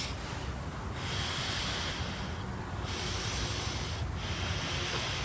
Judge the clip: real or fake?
real